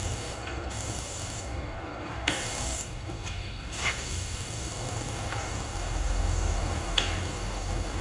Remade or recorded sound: remade